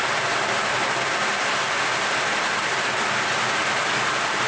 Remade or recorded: recorded